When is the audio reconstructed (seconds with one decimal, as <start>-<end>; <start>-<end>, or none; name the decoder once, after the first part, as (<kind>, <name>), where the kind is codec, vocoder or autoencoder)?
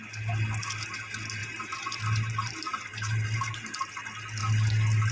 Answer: 1.4-3.9 (vocoder, BigVGAN v2)